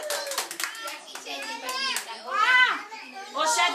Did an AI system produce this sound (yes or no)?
no